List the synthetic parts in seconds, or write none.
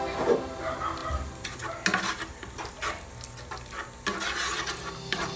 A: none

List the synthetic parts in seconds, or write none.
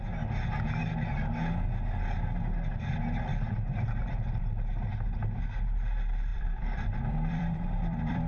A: 6.3-8.3 (vocoder, BigVGAN v2)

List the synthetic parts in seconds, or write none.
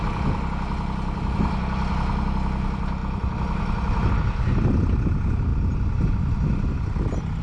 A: none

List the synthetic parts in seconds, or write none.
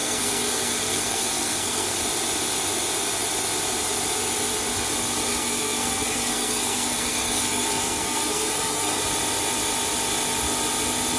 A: 0.0-2.0 (codec, SNAC); 5.3-9.0